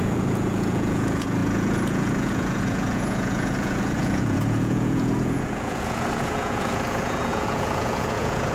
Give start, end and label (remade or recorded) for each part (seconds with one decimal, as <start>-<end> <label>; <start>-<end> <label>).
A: 0.0-8.5 remade